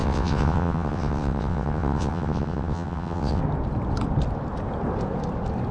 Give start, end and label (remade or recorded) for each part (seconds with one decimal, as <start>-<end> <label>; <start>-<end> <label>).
0.0-3.4 remade; 3.4-5.7 recorded